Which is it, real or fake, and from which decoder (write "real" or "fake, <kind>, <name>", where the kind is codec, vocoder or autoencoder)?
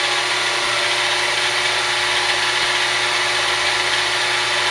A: real